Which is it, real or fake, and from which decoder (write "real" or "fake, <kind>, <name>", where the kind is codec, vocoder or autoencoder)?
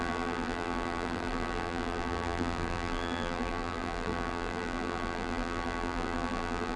fake, vocoder, BigVGAN v2